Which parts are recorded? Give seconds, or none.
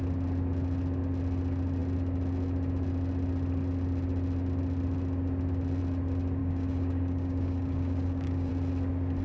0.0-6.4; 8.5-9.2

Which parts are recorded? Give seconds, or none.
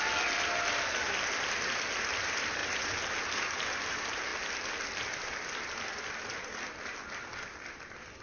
0.0-8.2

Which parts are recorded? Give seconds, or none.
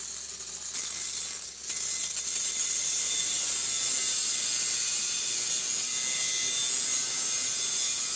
0.0-8.2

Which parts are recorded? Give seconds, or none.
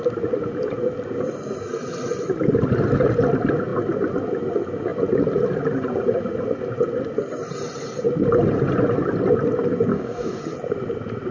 0.0-9.9; 10.4-11.3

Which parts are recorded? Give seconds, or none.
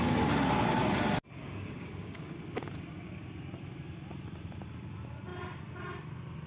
0.0-1.4; 2.3-6.5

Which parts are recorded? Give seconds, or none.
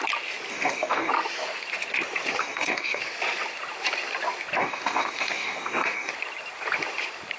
0.0-0.5; 1.1-2.4; 3.0-4.6; 6.1-7.4